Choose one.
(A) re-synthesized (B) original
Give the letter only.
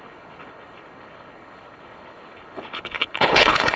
A